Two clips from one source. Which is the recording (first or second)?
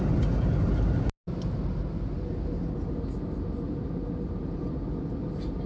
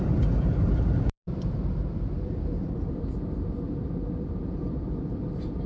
first